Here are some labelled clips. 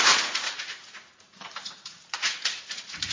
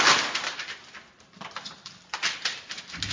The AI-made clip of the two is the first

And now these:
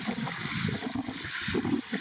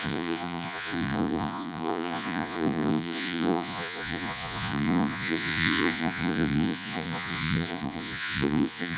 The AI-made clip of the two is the second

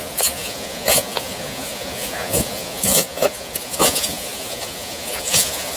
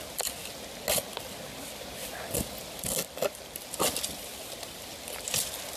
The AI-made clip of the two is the first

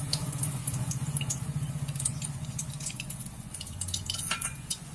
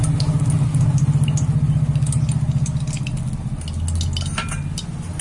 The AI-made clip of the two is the first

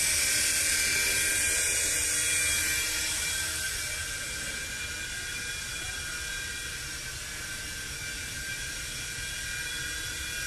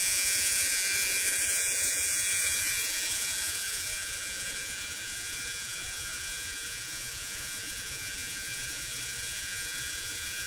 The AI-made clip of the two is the second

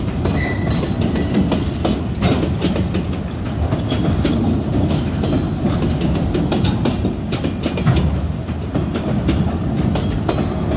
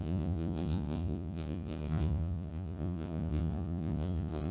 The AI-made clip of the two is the second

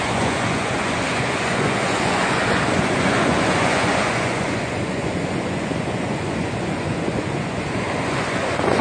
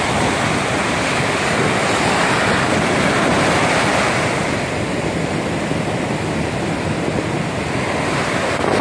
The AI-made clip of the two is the first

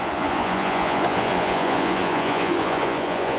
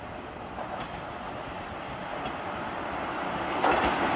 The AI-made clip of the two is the first